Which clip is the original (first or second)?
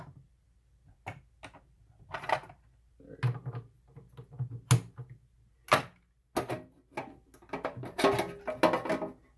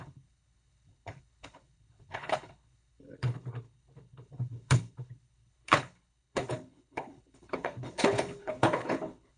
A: first